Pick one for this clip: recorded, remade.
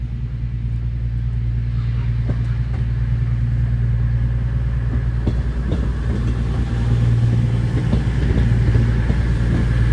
recorded